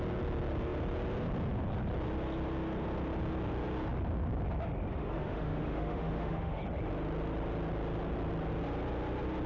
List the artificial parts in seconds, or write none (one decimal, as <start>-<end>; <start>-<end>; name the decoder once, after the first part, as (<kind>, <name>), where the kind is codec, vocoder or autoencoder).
4.9-6.6 (autoencoder, DAC-VAE)